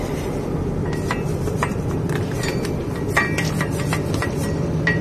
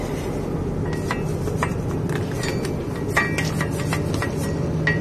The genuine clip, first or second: second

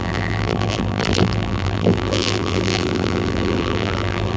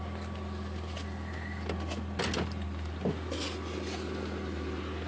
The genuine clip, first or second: second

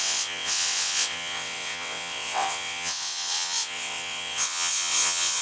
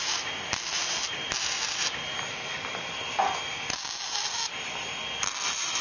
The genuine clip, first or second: second